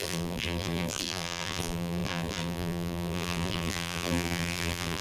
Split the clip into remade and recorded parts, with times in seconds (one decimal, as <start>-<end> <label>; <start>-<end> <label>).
0.0-5.0 remade